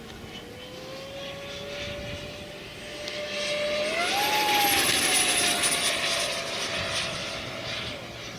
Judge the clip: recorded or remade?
recorded